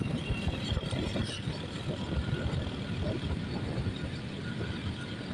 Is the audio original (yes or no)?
yes